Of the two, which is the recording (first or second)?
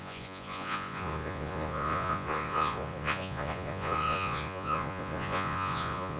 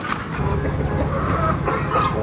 second